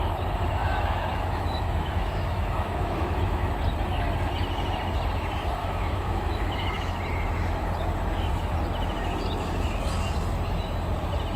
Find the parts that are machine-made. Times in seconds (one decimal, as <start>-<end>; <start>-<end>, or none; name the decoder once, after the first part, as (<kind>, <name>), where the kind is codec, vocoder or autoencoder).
0.6-3.5 (autoencoder, DAC-VAE); 5.6-7.0